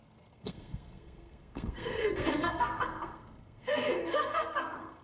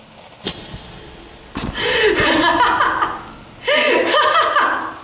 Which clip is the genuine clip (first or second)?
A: second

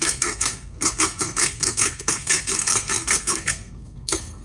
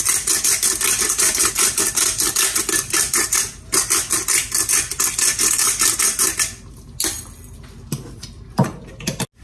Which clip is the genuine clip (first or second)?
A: second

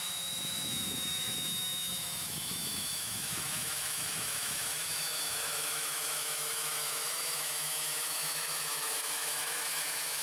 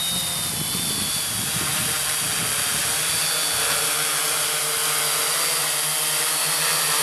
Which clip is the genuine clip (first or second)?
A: second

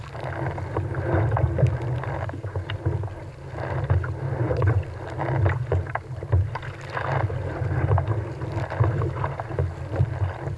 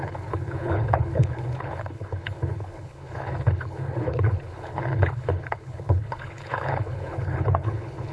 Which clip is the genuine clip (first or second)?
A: first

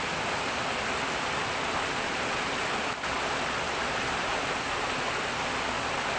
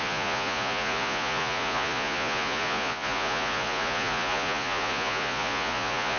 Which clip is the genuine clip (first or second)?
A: first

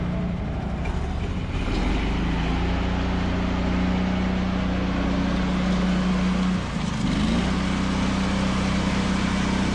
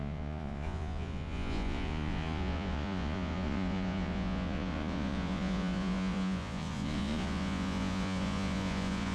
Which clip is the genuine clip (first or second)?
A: first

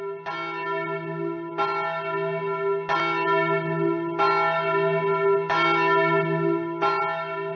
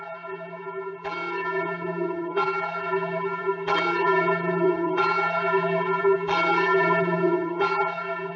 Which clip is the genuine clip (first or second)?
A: first